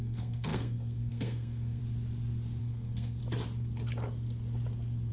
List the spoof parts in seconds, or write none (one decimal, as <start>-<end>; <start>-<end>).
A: 0.0-1.8; 2.6-3.2